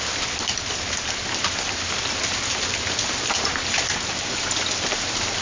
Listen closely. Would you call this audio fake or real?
real